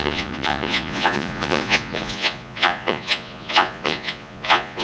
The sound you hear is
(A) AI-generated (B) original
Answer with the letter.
A